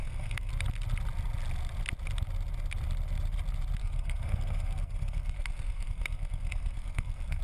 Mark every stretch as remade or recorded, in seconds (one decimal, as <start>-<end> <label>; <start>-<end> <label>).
0.0-0.5 remade; 0.5-3.8 recorded; 3.8-7.4 remade